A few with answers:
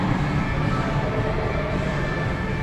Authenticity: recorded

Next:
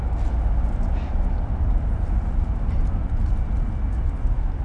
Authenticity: recorded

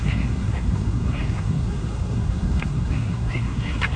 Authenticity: remade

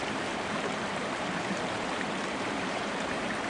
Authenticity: remade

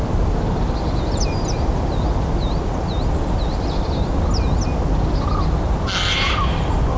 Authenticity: recorded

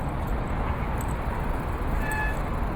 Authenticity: recorded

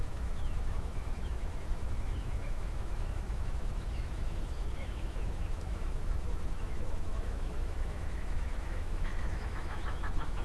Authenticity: remade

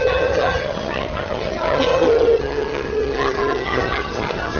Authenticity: remade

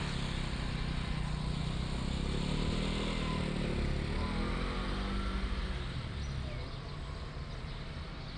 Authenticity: recorded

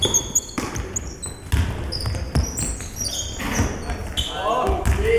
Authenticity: recorded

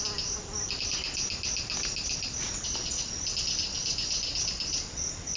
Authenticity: recorded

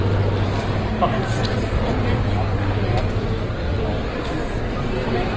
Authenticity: recorded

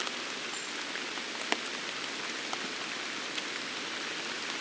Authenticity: recorded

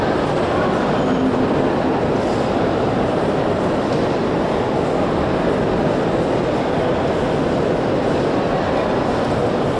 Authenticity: recorded